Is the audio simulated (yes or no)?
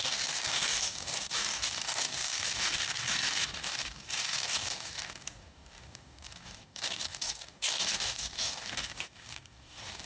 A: yes